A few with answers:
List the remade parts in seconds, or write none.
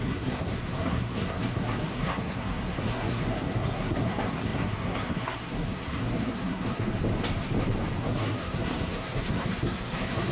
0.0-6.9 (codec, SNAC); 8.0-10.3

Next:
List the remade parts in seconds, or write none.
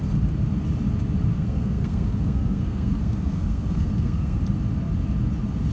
1.3-4.4 (codec, SNAC)